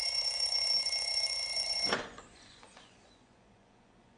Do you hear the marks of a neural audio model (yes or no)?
yes